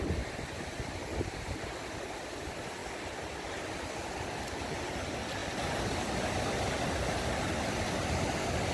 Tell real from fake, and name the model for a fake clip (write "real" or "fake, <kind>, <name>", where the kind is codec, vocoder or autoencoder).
real